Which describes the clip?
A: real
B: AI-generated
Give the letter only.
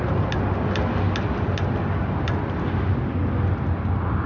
A